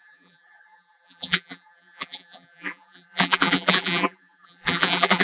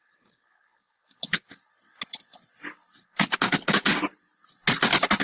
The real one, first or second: second